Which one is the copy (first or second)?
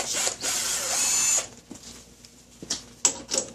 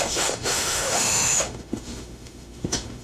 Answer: second